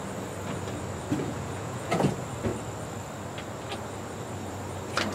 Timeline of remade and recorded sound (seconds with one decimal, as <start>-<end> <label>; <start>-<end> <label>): 0.0-1.2 recorded; 1.2-2.1 remade; 2.1-5.1 recorded